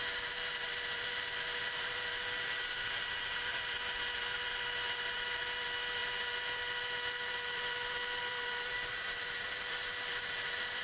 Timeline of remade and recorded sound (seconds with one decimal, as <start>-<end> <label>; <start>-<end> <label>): 0.0-10.8 remade